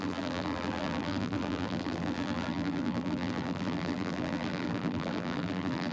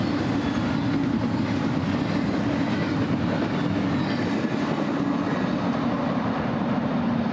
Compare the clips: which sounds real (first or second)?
second